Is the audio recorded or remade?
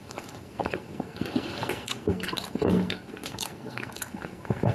remade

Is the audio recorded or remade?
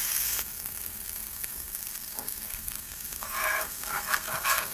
remade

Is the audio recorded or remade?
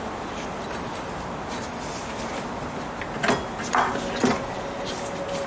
recorded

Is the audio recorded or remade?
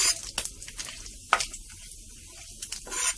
recorded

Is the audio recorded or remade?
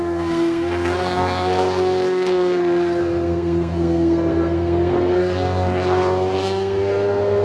remade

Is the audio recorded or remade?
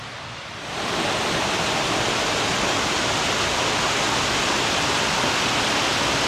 recorded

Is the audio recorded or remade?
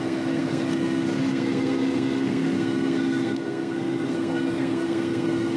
remade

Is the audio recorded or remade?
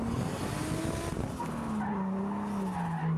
recorded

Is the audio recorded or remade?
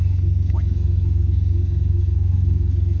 remade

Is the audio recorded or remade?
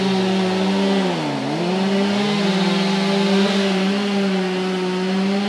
recorded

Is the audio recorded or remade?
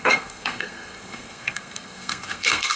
remade